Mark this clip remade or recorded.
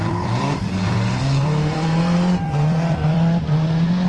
remade